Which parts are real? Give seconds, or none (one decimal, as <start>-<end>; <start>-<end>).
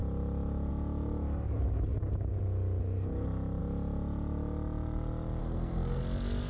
0.0-5.4; 6.0-6.5